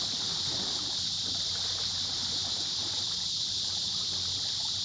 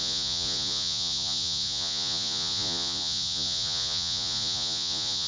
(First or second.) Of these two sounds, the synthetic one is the second